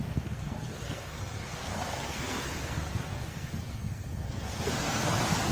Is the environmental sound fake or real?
fake